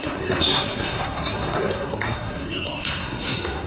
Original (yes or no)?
no